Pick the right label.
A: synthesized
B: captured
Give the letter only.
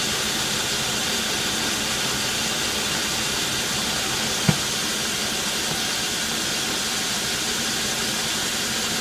B